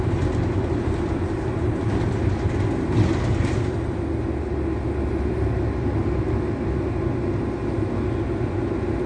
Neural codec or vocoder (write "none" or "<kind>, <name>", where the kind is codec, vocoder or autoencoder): none